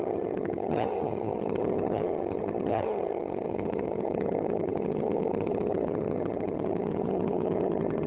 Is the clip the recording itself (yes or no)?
no